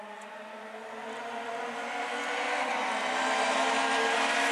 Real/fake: real